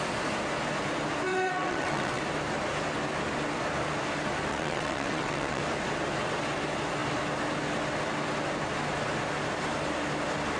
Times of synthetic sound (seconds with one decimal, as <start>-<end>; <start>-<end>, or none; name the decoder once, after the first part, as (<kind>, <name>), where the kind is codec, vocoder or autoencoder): 1.3-2.2 (vocoder, WaveNeXt); 4.5-5.6